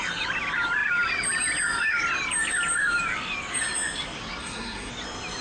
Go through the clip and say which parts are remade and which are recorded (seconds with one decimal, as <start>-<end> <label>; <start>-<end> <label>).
0.0-4.4 recorded; 4.4-4.9 remade; 4.9-5.4 recorded